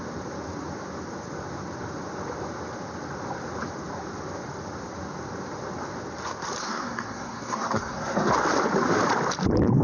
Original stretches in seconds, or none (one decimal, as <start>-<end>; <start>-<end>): 0.0-6.6; 8.3-9.8